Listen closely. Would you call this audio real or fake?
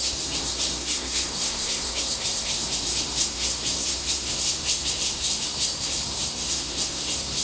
fake